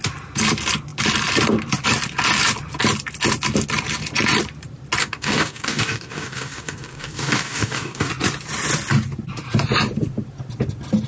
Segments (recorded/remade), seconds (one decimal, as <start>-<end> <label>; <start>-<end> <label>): 0.0-5.0 recorded; 5.0-8.1 remade; 8.1-11.1 recorded